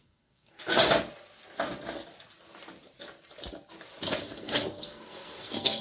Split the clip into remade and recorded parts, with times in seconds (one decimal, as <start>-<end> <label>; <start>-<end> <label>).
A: 0.0-0.7 remade; 0.7-4.2 recorded; 4.2-5.8 remade